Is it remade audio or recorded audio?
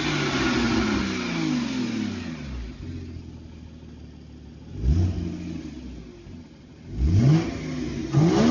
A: recorded